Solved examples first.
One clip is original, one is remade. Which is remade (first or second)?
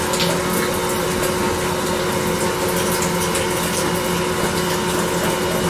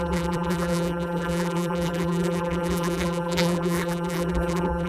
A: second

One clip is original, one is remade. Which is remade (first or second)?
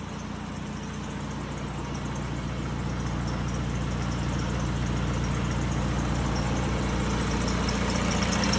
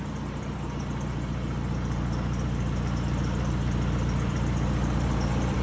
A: second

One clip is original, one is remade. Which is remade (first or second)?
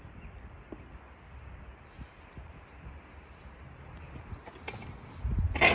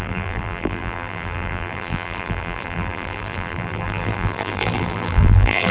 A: second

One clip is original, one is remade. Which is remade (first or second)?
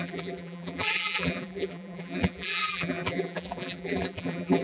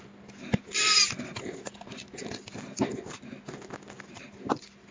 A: first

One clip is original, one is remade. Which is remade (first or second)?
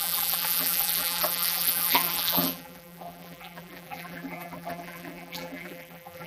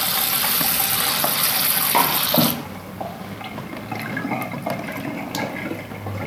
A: first